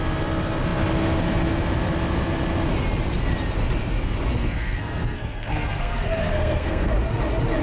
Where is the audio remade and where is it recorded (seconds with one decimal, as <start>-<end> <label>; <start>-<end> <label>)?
0.0-4.3 recorded; 4.3-6.9 remade; 6.9-7.6 recorded